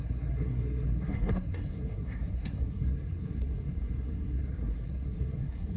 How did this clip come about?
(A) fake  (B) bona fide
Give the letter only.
A